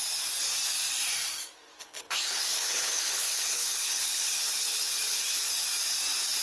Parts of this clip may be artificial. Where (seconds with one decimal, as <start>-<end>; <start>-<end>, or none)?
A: 1.8-5.4